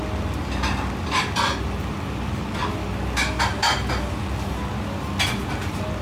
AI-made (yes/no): no